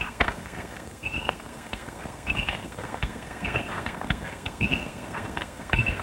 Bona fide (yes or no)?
no